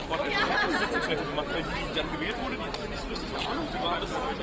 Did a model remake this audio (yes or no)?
no